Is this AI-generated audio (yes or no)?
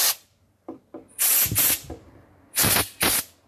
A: no